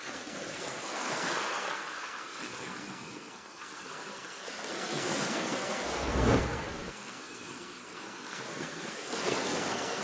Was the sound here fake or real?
fake